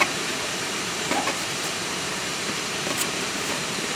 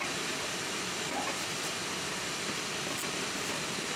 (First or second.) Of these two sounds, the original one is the second